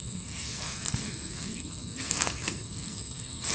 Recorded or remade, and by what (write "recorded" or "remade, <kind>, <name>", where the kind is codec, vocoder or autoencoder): remade, codec, SNAC